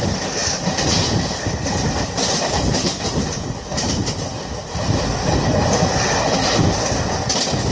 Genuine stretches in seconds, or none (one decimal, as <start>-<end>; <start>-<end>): 0.0-0.4; 3.9-7.7